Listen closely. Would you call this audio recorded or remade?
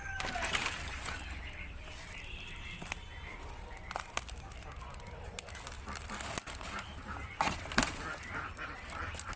recorded